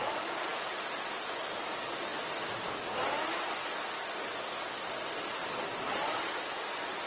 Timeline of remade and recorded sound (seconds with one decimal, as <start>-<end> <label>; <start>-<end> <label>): 0.0-5.4 recorded; 5.4-6.3 remade; 6.3-7.1 recorded